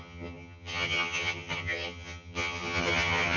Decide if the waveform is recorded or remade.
remade